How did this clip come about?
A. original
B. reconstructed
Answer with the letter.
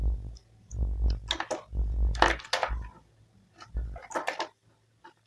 A